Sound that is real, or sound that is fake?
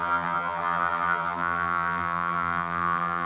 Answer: fake